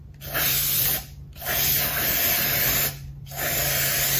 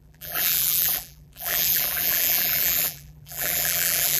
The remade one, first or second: second